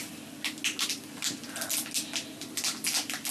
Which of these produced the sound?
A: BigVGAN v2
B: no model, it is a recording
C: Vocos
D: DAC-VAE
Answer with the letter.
B